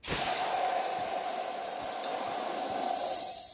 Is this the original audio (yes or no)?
yes